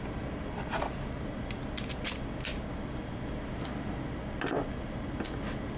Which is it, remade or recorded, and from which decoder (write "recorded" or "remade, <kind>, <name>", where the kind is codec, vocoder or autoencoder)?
recorded